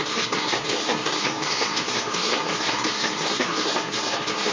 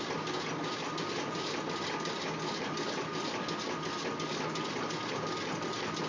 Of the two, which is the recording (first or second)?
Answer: second